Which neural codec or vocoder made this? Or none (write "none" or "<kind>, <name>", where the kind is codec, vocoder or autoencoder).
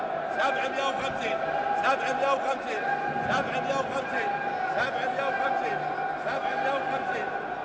none